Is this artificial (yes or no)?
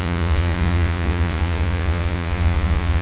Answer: yes